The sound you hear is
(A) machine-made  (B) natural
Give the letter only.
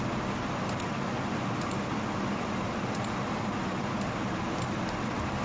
B